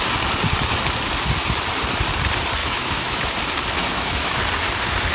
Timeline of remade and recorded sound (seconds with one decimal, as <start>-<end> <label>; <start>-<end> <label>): 0.0-2.6 recorded; 2.6-3.3 remade; 3.3-3.8 recorded; 3.8-4.4 remade; 4.4-5.1 recorded